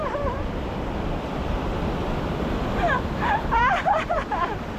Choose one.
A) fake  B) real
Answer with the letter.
A